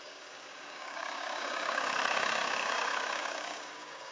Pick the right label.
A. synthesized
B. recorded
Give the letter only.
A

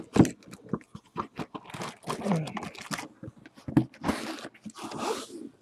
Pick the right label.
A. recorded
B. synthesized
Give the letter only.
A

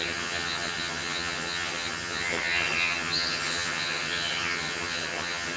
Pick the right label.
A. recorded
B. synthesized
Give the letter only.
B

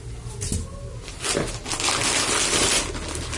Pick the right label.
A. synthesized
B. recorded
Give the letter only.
B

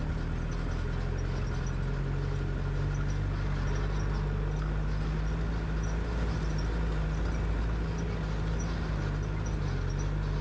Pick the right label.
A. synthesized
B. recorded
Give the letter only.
B